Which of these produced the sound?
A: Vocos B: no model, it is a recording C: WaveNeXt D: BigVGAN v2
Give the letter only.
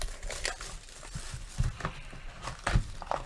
B